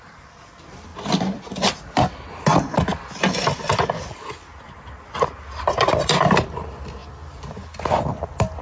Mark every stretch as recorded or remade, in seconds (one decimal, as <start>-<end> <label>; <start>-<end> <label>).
0.0-8.6 recorded